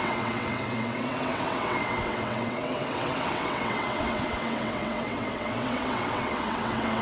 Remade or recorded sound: remade